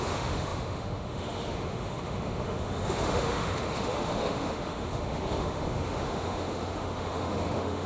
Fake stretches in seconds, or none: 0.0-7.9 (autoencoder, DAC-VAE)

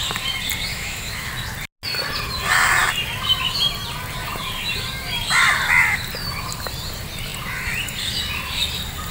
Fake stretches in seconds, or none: 0.7-1.3 (autoencoder, DAC-VAE)

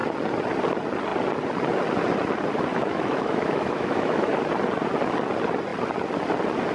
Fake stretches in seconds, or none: 2.7-4.4 (autoencoder, DAC-VAE)

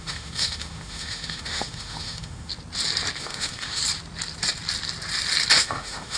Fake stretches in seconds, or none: 0.0-2.5 (autoencoder, DAC-VAE); 3.2-3.8; 5.6-6.2

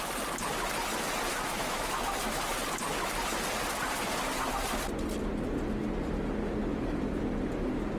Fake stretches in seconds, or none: 1.3-2.6 (autoencoder, DAC-VAE)